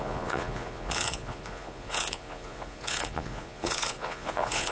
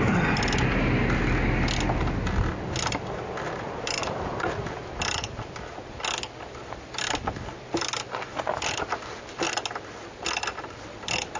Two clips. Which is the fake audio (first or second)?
first